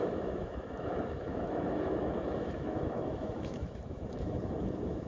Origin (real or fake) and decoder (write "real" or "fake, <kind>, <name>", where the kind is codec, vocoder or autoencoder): fake, autoencoder, DAC-VAE